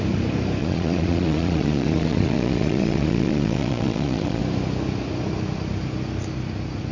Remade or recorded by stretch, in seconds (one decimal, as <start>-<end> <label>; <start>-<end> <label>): 0.0-0.6 recorded; 0.6-4.4 remade; 4.4-6.9 recorded